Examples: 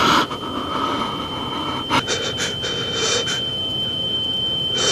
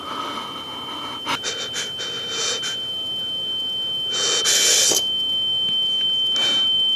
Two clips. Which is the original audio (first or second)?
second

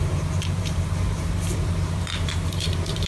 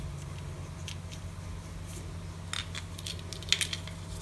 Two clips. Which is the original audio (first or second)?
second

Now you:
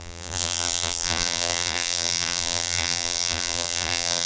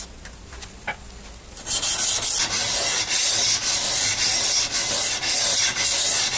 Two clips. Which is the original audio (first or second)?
second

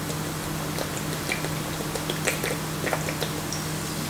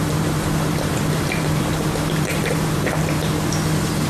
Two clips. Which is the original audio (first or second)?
first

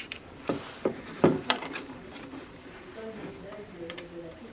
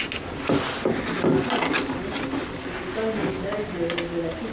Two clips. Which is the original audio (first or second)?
second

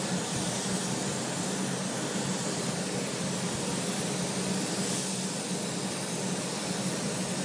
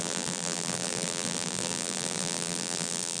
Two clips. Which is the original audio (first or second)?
first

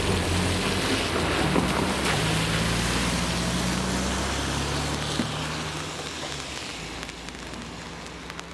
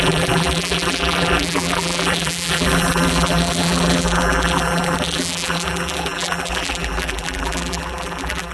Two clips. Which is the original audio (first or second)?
first